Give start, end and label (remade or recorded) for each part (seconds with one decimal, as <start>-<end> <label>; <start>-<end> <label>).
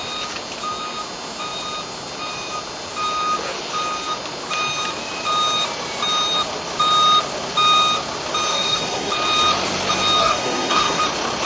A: 0.0-8.5 recorded; 8.5-9.1 remade; 9.1-10.2 recorded; 10.2-11.0 remade; 11.0-11.5 recorded